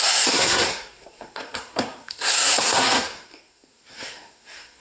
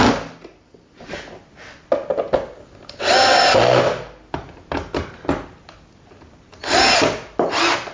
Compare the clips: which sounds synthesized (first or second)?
first